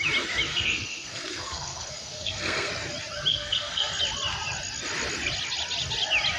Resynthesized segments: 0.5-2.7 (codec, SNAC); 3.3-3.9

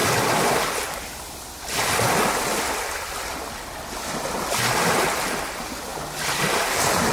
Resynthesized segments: none

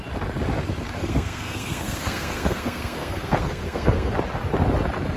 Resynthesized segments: 1.0-4.1 (codec, SNAC)